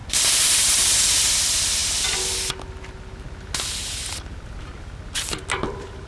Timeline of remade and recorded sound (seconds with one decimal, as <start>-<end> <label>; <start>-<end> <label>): 0.0-1.8 remade; 1.8-5.5 recorded; 5.5-6.1 remade